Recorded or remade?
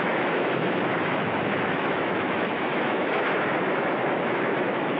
remade